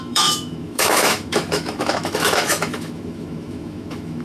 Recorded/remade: remade